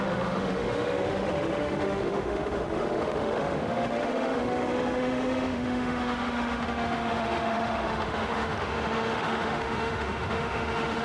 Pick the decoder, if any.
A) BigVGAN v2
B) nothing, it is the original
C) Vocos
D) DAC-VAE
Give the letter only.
D